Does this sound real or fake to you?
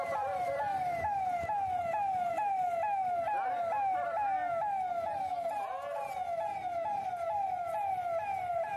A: real